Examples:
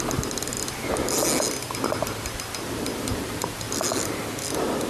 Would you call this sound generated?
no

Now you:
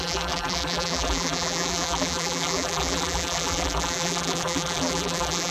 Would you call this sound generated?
yes